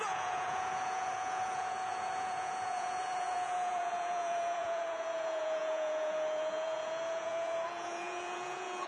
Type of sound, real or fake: fake